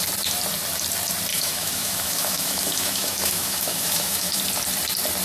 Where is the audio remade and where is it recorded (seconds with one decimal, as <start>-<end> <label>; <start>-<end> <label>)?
0.0-1.3 recorded; 1.3-4.4 remade; 4.4-5.2 recorded